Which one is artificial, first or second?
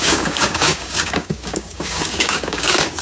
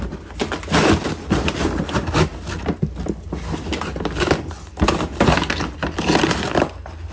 first